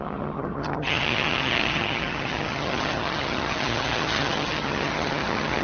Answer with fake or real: fake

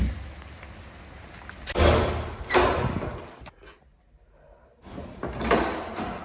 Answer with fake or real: real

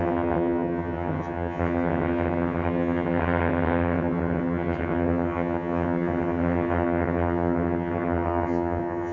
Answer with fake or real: fake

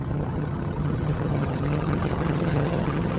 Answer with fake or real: fake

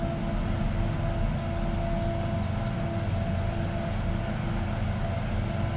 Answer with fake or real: real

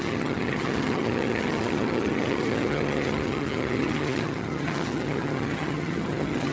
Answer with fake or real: fake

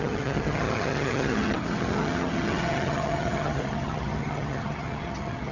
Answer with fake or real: fake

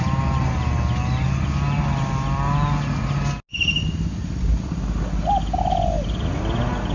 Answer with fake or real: real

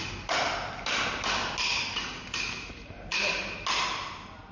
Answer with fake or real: real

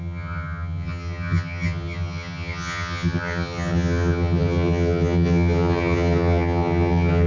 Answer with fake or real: fake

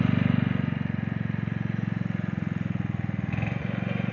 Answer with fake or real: real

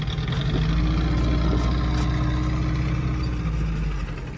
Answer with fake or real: real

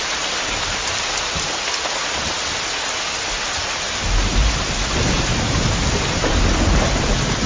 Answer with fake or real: real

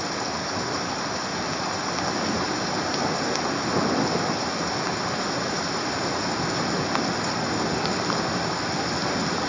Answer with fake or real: real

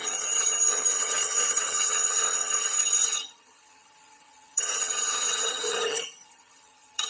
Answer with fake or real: fake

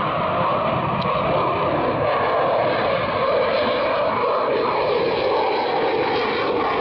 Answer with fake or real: real